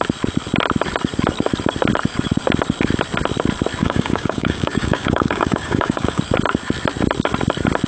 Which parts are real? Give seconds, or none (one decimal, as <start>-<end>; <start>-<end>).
0.0-3.8; 6.2-7.9

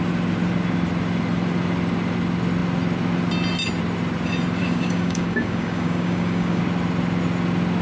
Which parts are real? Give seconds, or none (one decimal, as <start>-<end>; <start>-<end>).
0.0-4.6; 6.6-7.8

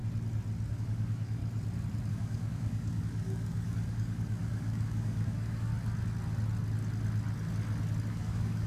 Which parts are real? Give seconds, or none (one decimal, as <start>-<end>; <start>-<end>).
0.0-0.7; 1.4-2.1; 5.7-8.1

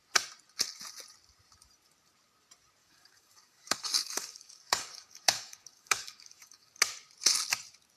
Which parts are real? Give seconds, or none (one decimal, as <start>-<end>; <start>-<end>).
0.0-2.8; 6.7-8.0

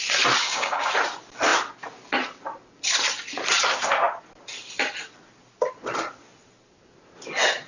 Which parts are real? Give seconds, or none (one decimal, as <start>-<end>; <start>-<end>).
0.0-0.4; 0.9-7.7

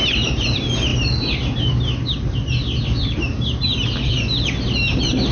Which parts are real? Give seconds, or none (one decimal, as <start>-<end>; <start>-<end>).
0.0-5.3

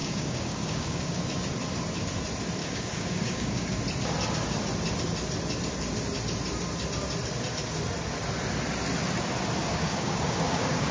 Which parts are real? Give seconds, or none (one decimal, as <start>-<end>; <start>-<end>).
1.2-2.6; 3.8-9.6